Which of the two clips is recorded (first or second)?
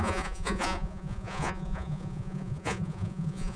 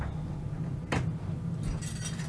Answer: second